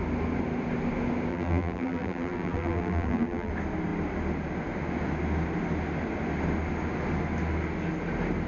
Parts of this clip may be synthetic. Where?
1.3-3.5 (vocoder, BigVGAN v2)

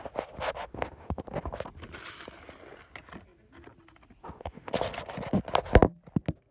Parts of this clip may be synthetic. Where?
0.6-1.2 (autoencoder, DAC-VAE); 4.2-4.7